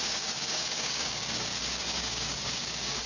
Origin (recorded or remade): remade